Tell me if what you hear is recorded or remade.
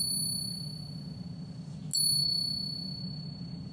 recorded